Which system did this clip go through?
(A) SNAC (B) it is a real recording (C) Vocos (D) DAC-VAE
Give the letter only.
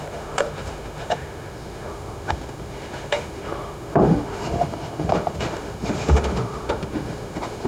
D